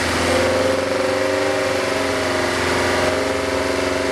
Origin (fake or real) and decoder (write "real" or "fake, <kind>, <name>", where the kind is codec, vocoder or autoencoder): real